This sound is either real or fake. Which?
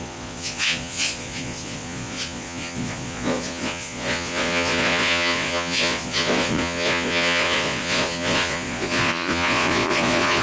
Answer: fake